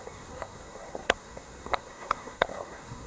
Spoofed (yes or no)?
yes